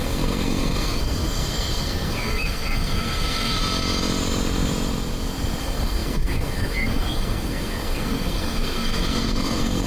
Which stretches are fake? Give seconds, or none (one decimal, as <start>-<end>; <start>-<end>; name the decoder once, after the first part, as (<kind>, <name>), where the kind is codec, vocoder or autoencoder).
0.0-3.6 (codec, SNAC); 5.6-9.9